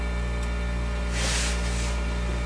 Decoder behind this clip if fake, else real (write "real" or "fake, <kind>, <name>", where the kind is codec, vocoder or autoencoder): real